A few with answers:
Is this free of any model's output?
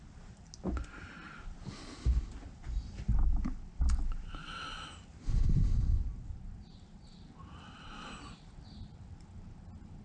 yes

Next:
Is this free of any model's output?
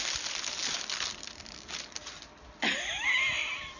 yes